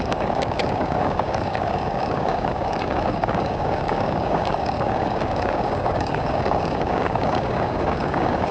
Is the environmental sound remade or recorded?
remade